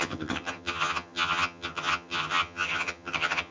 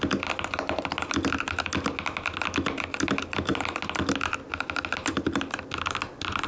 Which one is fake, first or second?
first